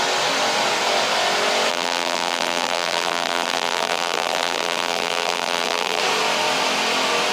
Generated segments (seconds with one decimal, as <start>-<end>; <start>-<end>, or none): 1.7-6.0